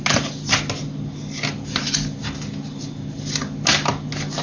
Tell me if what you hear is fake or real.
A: real